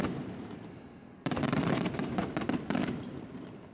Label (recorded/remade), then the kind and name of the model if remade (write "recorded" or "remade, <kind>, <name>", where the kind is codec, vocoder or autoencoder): remade, vocoder, BigVGAN v2